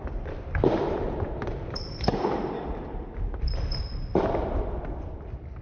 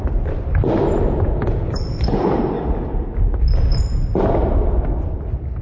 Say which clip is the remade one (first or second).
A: first